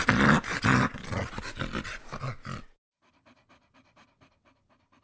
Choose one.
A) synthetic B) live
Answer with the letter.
B